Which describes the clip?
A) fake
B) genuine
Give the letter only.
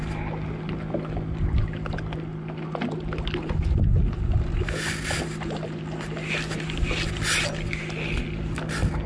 B